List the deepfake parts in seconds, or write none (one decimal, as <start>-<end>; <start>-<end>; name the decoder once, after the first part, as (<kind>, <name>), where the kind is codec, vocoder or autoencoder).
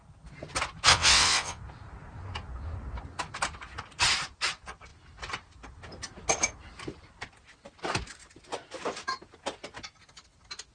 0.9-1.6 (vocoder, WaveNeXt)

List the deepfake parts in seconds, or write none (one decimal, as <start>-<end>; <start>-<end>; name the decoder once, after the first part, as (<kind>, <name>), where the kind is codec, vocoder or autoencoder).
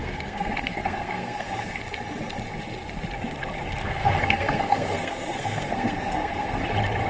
0.0-1.8 (codec, SNAC); 3.8-6.6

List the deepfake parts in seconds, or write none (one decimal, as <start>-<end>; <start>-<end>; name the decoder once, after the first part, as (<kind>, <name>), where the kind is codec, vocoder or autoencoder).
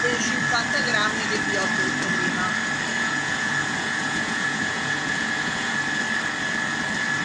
2.9-5.7 (vocoder, Vocos)